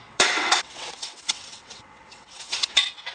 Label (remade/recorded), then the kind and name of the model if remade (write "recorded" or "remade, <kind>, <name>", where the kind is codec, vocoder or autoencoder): remade, vocoder, WaveNeXt